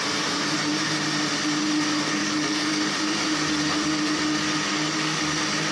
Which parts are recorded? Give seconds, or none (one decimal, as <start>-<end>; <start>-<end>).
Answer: 0.0-2.2; 2.7-4.7; 5.2-5.7